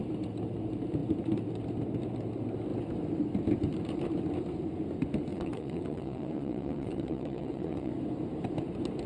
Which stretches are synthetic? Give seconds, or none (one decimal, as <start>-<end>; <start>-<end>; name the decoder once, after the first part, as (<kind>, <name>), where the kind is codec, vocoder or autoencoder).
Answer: 5.3-7.9 (vocoder, WaveNeXt)